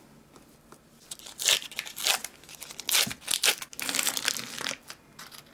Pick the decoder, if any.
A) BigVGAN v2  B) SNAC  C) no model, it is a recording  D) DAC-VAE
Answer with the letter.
C